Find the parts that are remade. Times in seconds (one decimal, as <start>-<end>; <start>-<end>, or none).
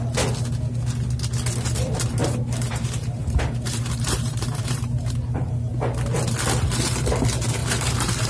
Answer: 2.2-2.8; 3.2-5.7; 7.6-8.3